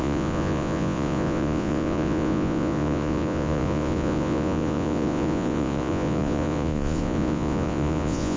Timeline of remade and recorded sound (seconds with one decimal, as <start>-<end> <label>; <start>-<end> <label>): 0.0-8.4 remade